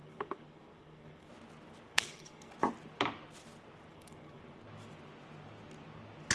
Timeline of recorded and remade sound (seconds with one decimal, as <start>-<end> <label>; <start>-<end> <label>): 0.0-1.3 remade; 1.3-1.9 recorded; 1.9-2.5 remade; 2.5-3.9 recorded; 3.9-4.4 remade; 4.4-6.3 recorded